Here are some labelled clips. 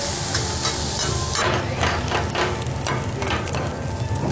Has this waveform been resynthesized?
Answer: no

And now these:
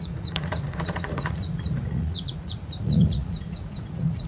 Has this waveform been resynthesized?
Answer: yes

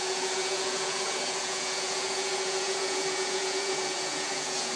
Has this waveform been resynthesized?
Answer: yes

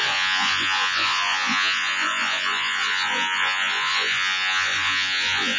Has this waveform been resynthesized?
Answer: yes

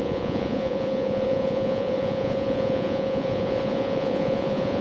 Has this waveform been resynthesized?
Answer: yes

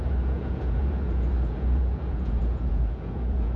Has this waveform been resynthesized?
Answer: yes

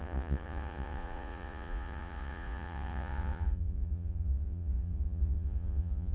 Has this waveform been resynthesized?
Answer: yes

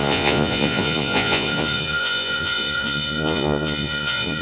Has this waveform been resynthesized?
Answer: yes